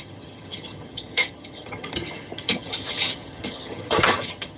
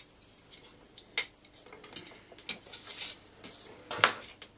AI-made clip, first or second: first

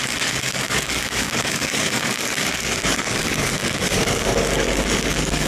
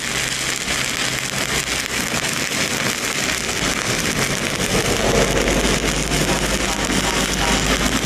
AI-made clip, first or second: first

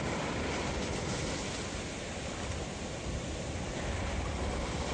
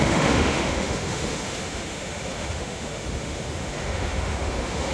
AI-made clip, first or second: second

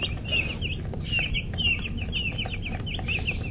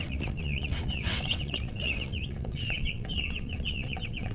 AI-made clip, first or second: second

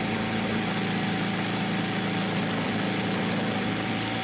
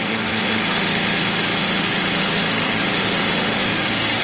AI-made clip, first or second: second